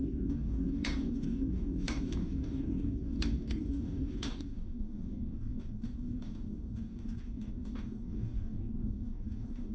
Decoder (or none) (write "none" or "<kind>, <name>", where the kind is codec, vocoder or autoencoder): codec, DAC